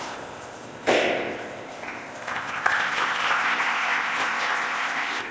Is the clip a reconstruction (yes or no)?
yes